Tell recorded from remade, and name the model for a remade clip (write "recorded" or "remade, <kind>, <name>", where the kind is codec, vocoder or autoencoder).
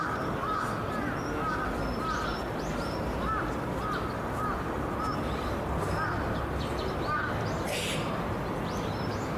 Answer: recorded